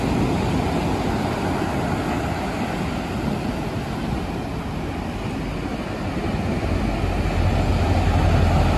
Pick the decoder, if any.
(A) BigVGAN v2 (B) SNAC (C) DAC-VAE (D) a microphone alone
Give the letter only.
D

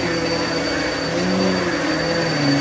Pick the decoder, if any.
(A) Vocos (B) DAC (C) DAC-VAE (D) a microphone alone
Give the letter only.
D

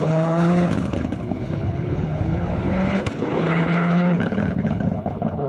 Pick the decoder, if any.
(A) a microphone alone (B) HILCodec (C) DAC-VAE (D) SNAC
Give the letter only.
B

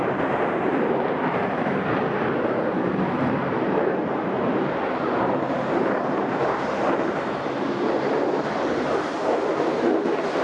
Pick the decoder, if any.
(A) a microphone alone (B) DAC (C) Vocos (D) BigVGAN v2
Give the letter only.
D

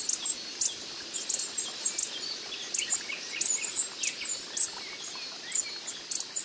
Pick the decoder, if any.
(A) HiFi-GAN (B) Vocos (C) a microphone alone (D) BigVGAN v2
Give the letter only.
C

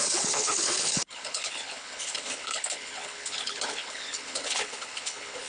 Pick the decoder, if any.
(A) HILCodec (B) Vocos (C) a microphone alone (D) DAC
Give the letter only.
A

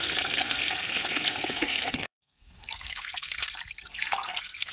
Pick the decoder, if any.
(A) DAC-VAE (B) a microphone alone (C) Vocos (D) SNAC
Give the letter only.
D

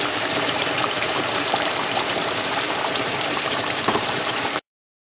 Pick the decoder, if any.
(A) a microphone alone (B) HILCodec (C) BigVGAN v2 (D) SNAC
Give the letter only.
C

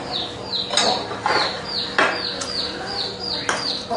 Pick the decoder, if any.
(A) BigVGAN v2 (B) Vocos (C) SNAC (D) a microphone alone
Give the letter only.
D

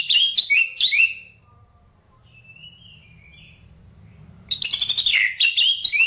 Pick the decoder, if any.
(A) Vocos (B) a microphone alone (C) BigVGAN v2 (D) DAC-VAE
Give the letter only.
C